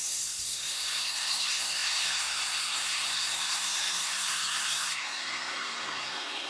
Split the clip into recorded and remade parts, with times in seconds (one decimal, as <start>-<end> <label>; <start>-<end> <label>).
0.0-6.5 remade

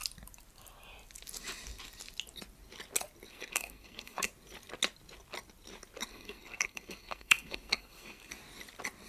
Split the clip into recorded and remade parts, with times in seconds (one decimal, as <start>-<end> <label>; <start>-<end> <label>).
0.0-3.3 recorded; 3.3-4.3 remade; 4.3-6.1 recorded; 6.1-8.3 remade; 8.3-9.1 recorded

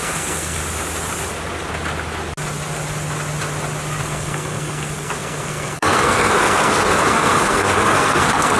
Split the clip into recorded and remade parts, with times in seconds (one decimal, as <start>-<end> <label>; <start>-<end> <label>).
0.0-0.6 remade; 0.6-4.0 recorded; 4.0-8.6 remade

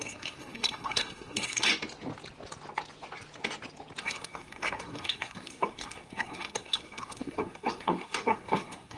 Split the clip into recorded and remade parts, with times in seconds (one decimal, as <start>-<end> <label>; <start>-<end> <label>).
0.0-1.7 remade; 1.7-4.0 recorded; 4.0-9.0 remade